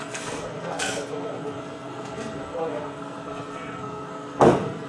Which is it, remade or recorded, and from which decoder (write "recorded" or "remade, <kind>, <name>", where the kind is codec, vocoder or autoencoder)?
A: remade, codec, SNAC